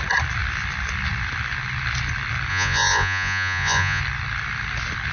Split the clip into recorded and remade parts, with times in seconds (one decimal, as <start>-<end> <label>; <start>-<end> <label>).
0.0-2.5 recorded; 2.5-4.0 remade; 4.0-5.1 recorded